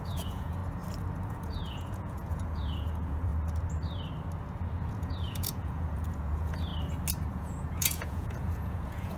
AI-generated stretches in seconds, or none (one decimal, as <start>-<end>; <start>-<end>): 0.0-0.6; 1.3-3.3; 4.9-6.7; 7.3-9.2